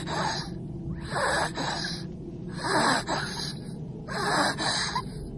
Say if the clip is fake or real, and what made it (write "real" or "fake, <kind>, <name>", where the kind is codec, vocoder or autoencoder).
real